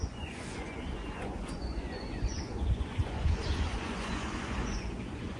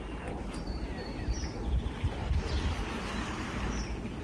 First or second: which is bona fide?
second